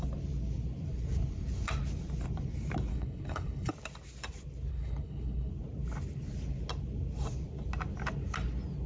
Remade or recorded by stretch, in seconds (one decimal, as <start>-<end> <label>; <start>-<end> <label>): 0.0-2.9 recorded; 2.9-3.7 remade; 3.7-4.7 recorded; 4.7-5.5 remade; 5.5-8.9 recorded